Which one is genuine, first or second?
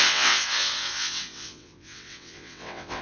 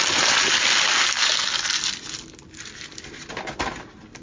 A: second